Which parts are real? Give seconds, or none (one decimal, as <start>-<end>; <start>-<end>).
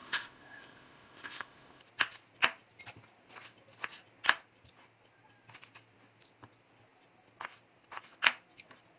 1.8-9.0